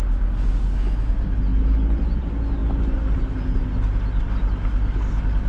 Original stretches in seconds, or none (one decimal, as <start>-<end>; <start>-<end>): 0.0-5.5